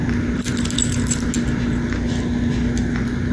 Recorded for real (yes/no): yes